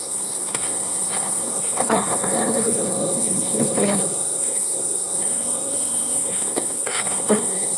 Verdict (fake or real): fake